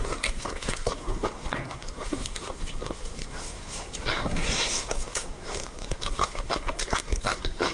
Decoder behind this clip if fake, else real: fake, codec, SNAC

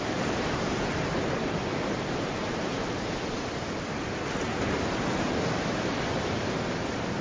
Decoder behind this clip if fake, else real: real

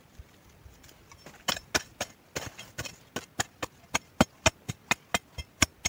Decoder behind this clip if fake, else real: real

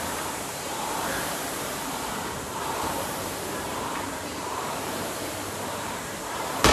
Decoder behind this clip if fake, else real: fake, vocoder, BigVGAN v2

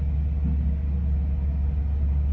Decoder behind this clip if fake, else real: real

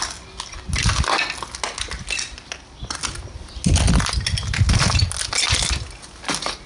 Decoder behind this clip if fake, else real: real